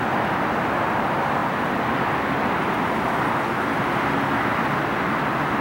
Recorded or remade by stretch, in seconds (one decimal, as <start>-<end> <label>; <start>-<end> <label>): 0.0-5.6 recorded